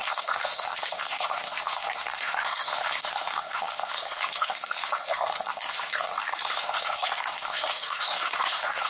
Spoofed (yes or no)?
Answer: yes